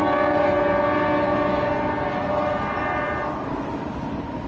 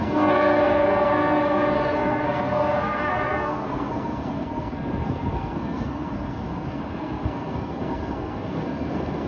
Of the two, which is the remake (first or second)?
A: second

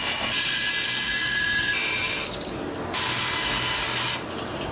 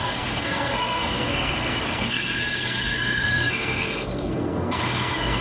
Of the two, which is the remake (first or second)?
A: second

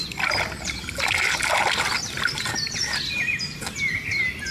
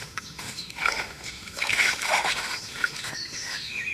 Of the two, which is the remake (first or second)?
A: second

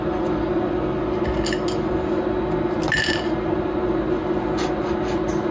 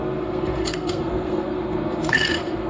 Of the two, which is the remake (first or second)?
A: second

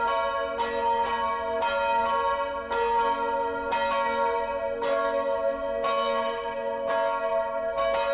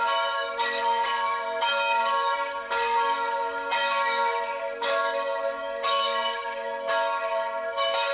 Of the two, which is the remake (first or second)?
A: second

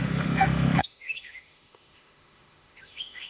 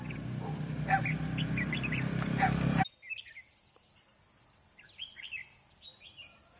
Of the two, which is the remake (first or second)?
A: first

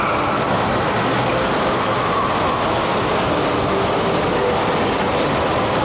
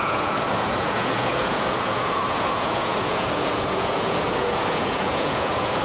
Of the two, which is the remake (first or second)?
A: second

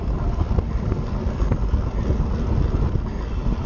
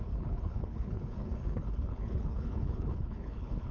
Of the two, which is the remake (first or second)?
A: second